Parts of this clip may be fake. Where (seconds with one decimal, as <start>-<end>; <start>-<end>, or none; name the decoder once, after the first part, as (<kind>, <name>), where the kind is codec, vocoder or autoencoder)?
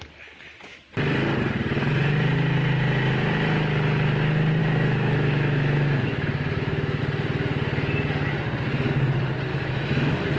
4.6-7.0 (autoencoder, DAC-VAE); 9.5-10.4